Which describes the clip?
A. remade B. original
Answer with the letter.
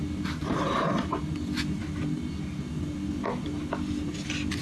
B